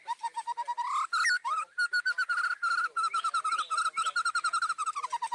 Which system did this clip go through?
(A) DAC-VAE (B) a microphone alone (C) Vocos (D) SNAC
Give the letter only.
B